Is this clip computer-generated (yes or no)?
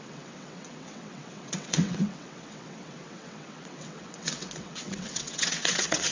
yes